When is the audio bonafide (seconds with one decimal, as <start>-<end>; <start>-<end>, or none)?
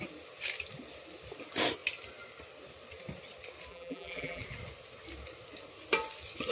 0.0-3.7; 4.4-6.5